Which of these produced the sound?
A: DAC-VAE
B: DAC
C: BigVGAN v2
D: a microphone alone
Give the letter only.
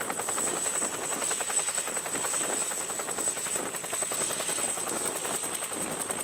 D